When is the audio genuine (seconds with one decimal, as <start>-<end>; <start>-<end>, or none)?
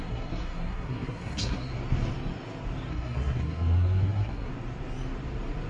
1.7-2.9; 4.5-5.7